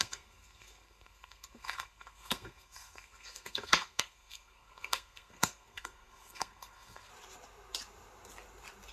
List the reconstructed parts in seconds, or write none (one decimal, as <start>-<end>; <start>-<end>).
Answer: 0.0-7.1